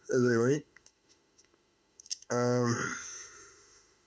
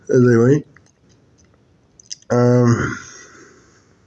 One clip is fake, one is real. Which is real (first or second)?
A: second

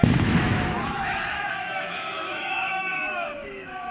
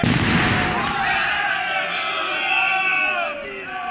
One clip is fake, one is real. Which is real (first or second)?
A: second